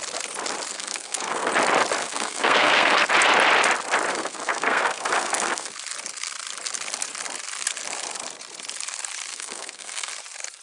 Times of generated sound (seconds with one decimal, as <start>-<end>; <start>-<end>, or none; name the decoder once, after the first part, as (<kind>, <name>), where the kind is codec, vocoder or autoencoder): 0.7-1.5 (codec, SNAC); 2.0-3.1; 4.1-5.7; 9.3-10.1